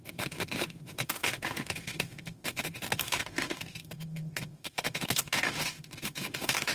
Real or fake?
fake